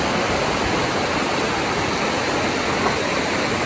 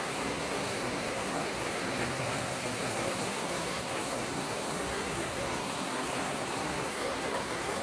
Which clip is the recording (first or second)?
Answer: first